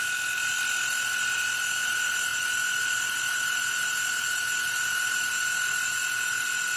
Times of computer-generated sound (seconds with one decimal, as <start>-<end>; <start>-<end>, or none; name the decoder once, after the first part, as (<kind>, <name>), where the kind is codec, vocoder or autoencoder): none